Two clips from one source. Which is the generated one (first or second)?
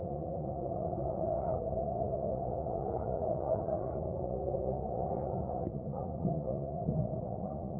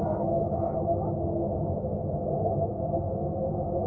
first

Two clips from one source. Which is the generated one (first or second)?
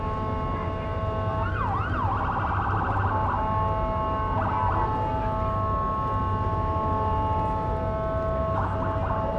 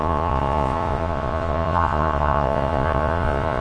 second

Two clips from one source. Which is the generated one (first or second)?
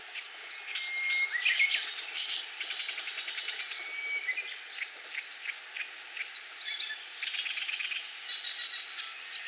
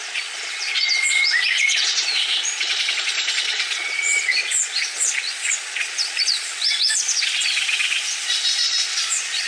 second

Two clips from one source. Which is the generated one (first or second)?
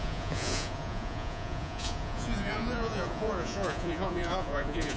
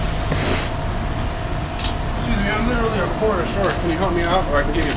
first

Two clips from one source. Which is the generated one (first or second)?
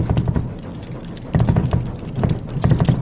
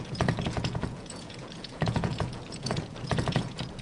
second